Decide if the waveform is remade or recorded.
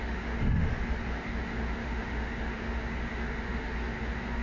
remade